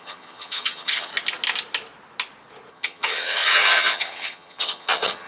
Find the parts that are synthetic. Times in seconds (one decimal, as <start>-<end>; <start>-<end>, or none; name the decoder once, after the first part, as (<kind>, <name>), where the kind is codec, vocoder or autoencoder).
0.0-1.1 (vocoder, HiFi-GAN); 2.7-5.3